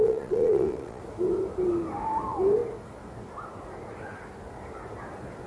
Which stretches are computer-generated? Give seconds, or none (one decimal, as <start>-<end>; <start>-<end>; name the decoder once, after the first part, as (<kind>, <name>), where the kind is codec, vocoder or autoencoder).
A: 0.0-1.0 (vocoder, Vocos)